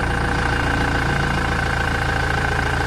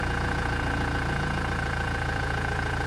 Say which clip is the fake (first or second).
second